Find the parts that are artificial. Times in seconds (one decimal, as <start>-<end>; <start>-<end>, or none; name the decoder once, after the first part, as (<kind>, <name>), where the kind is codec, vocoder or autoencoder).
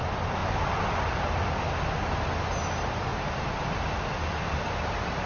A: 0.4-1.3 (vocoder, BigVGAN v2); 3.1-4.0